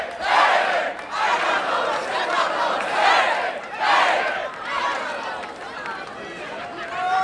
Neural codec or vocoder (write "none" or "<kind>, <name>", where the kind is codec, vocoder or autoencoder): vocoder, BigVGAN v2